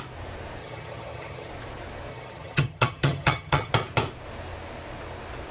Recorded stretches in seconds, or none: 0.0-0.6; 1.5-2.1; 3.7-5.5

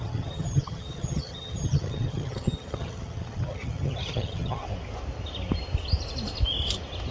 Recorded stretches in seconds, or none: 4.6-7.1

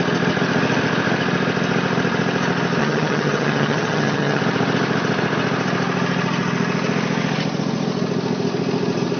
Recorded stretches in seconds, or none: 0.0-2.8; 4.4-9.2

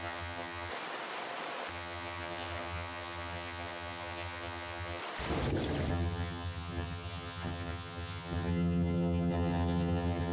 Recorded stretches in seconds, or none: 0.7-1.7; 5.0-5.9

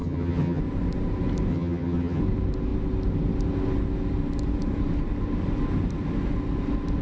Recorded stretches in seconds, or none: 0.6-1.5; 2.2-7.0

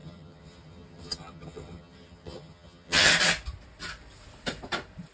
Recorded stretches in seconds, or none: 3.1-5.1

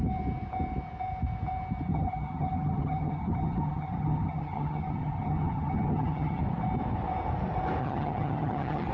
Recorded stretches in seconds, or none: 0.0-1.9; 6.4-7.8